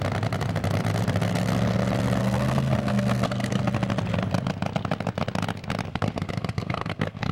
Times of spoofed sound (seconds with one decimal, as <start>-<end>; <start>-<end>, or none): 2.2-3.6; 5.9-7.3